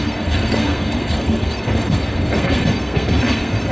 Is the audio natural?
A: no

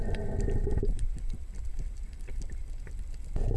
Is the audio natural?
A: yes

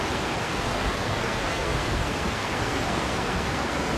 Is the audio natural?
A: no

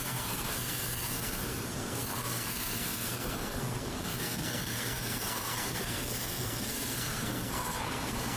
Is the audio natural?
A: no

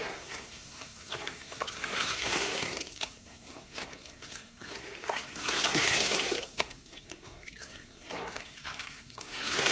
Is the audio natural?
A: no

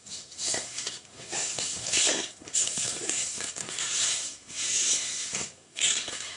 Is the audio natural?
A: no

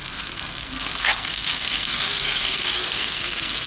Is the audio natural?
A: no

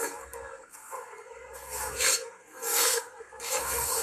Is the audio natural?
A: no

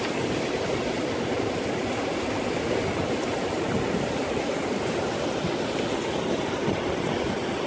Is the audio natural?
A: yes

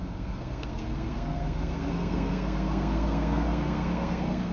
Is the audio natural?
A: no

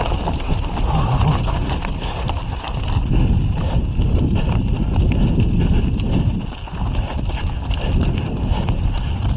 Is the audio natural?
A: yes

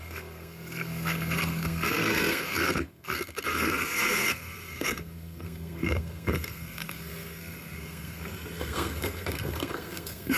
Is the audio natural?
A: no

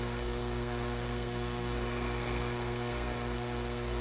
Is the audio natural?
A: no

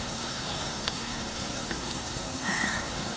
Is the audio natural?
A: no